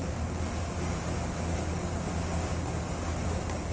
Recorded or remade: recorded